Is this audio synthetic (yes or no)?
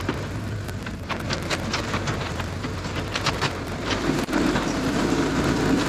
yes